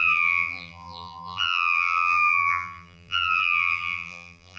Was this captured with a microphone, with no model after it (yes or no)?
no